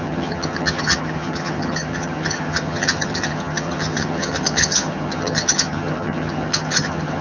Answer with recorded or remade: remade